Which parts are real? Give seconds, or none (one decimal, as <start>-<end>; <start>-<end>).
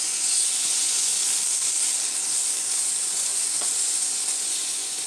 1.1-2.6